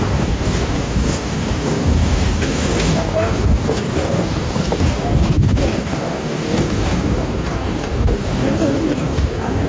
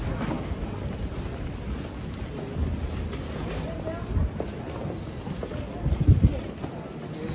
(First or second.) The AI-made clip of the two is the first